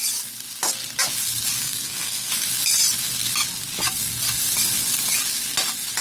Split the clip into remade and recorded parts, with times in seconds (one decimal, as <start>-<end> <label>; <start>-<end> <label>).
0.0-1.6 recorded; 1.6-2.3 remade; 2.3-6.0 recorded